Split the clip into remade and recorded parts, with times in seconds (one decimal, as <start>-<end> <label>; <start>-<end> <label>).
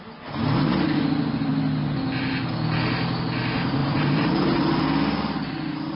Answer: 0.0-3.8 recorded; 3.8-4.8 remade; 4.8-5.9 recorded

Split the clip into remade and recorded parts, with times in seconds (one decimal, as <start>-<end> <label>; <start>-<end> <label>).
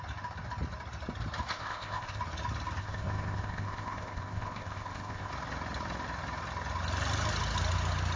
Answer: 0.0-1.5 recorded; 1.5-2.2 remade; 2.2-2.8 recorded; 2.8-5.3 remade; 5.3-8.2 recorded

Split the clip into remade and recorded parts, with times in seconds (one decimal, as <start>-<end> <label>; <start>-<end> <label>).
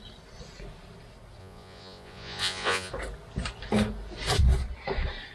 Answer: 0.0-1.4 recorded; 1.4-2.9 remade; 2.9-5.3 recorded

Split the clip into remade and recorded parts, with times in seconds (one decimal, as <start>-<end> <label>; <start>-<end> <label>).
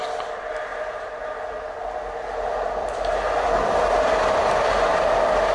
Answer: 0.0-5.5 recorded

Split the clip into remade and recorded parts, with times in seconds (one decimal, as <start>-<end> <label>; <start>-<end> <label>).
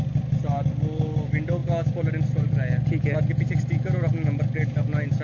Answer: 0.0-5.2 recorded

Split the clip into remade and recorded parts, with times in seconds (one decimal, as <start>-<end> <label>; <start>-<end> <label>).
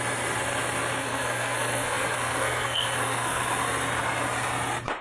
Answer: 0.0-1.0 recorded; 1.0-3.4 remade; 3.4-5.0 recorded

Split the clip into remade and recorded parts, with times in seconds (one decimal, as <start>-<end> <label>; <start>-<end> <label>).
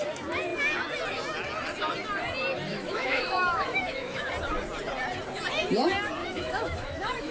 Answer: 0.0-2.7 recorded; 2.7-4.3 remade; 4.3-6.2 recorded; 6.2-7.3 remade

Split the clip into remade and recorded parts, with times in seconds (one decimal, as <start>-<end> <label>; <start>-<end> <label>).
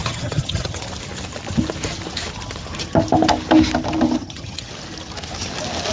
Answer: 0.0-0.8 remade; 0.8-4.2 recorded; 4.2-4.7 remade; 4.7-5.9 recorded